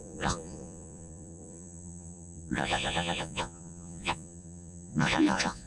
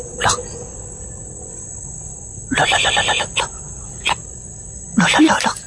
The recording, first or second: second